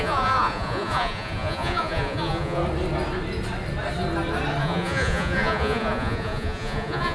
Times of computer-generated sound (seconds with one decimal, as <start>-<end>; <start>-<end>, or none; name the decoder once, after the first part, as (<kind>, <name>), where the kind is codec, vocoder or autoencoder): 0.0-2.6 (vocoder, Vocos); 4.6-7.1